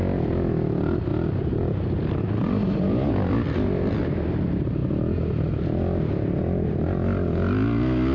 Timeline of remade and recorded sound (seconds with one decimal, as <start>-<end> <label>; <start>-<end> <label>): 0.0-8.1 recorded